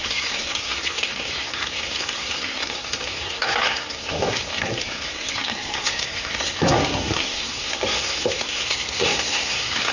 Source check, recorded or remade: remade